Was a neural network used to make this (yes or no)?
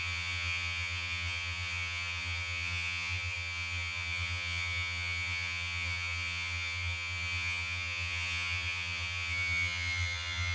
yes